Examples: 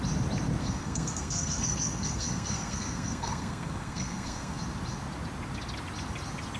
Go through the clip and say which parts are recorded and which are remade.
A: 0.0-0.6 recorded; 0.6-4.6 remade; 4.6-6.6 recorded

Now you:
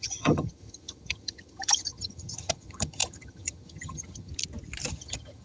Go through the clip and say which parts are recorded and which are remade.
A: 0.0-4.3 remade; 4.3-4.9 recorded; 4.9-5.4 remade

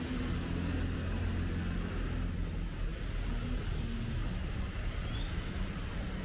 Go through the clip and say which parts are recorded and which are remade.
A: 0.0-6.2 recorded

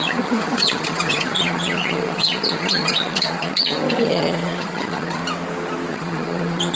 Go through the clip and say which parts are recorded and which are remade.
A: 0.0-5.2 remade; 5.2-5.9 recorded; 5.9-6.8 remade

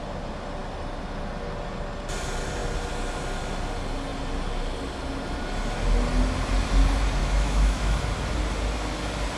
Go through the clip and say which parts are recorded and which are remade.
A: 0.0-7.2 recorded; 7.2-8.0 remade; 8.0-9.4 recorded

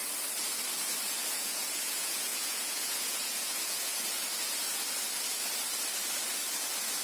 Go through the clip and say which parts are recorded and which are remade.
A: 0.0-1.1 recorded; 1.1-3.9 remade; 3.9-7.0 recorded

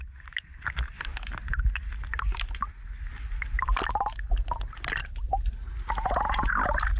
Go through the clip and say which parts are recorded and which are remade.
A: 0.0-7.0 recorded